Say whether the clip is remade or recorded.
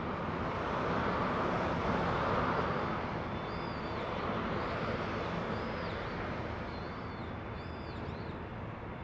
recorded